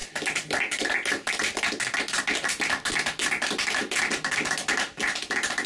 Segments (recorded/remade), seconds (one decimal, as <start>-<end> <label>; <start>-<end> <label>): 0.0-5.7 recorded